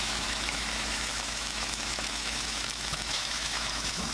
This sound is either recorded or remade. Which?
remade